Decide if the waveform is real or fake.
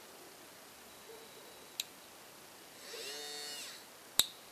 real